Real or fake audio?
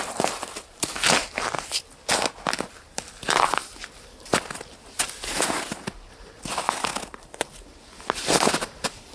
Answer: real